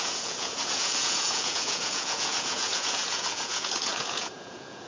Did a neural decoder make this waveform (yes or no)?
yes